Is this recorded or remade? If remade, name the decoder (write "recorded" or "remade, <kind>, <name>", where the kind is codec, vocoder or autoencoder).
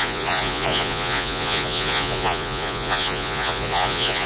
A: remade, vocoder, Vocos